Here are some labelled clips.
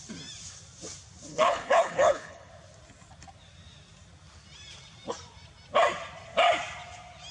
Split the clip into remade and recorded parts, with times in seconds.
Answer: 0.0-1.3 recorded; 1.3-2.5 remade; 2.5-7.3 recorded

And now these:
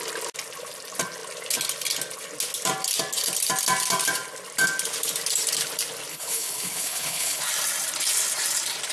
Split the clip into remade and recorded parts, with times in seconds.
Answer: 0.0-6.1 recorded; 6.1-7.4 remade; 7.4-8.9 recorded